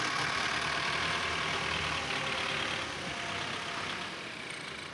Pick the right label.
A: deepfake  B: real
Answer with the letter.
A